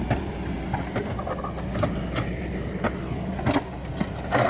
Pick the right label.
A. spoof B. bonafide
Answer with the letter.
B